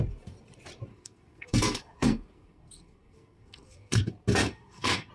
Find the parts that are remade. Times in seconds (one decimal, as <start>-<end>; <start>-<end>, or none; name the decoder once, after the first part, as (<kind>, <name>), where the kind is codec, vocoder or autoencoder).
0.9-4.0 (codec, SNAC); 4.4-5.1